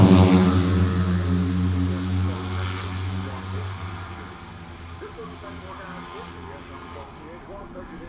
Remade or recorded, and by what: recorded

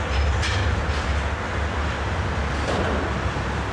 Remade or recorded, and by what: recorded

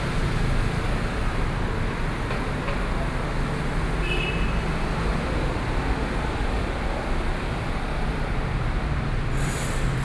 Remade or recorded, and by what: recorded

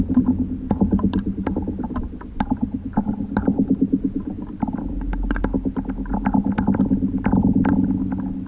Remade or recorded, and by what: recorded